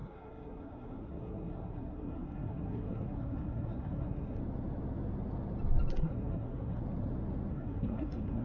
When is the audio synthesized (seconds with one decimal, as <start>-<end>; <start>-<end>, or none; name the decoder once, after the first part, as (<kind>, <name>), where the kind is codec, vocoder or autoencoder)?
0.0-4.4 (codec, SNAC); 5.9-6.8; 7.5-8.4

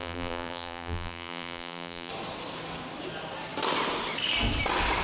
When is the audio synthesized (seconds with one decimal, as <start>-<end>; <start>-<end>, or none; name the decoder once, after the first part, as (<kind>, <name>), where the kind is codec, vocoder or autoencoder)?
0.0-2.1 (vocoder, BigVGAN v2)

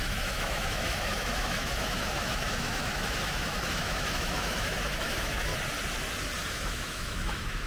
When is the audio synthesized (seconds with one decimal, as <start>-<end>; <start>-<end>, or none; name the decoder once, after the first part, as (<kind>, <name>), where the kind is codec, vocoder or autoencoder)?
0.0-5.5 (autoencoder, DAC-VAE); 6.5-7.7